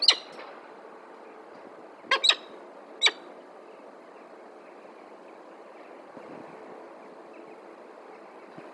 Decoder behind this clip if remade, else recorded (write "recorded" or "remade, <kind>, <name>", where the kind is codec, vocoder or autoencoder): recorded